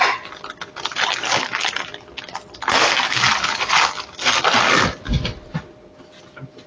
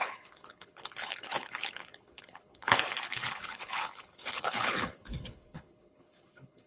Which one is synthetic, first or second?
second